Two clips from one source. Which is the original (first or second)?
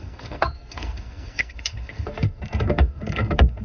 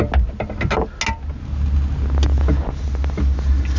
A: second